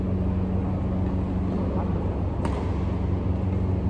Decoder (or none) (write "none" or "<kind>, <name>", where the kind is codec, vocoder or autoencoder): none